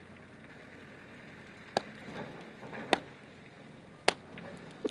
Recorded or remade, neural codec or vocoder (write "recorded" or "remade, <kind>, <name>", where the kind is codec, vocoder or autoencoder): recorded